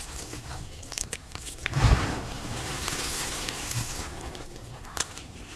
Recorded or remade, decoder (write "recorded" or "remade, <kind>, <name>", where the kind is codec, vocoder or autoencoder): remade, codec, SNAC